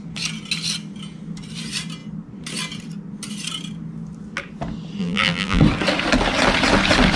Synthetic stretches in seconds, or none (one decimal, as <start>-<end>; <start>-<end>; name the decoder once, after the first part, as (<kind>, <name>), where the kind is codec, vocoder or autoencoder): 5.0-5.6 (vocoder, BigVGAN v2)